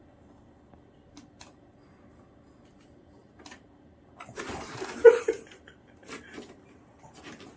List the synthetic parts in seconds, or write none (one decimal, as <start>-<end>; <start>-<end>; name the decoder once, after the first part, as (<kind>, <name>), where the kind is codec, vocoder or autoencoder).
3.2-5.6 (vocoder, BigVGAN v2); 6.0-7.0